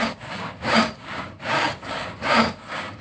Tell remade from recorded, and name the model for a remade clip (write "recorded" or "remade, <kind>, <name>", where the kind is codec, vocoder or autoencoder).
remade, codec, DAC